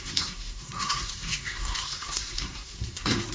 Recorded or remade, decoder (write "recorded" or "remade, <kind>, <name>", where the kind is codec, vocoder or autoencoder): remade, codec, SNAC